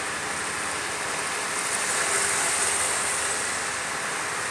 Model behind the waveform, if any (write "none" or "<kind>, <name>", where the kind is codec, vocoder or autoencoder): none